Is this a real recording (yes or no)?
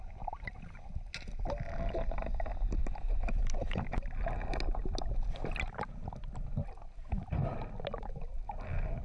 yes